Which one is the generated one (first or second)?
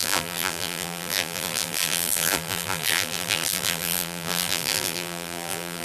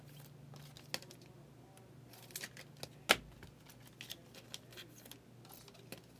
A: first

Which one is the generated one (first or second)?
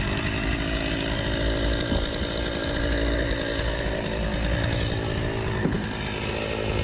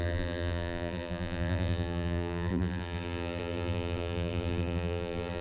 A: second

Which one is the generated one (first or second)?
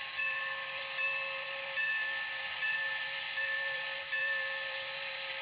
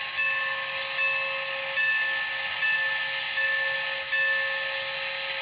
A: first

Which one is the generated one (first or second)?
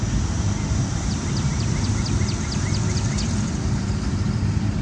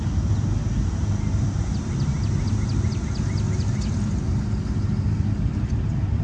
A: first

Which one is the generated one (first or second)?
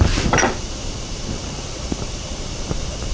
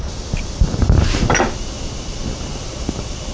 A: first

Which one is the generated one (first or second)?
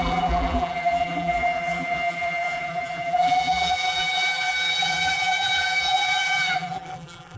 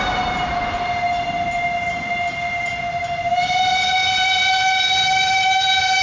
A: first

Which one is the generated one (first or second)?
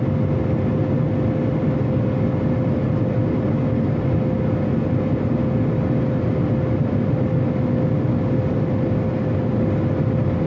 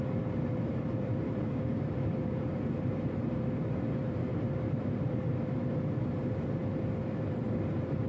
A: second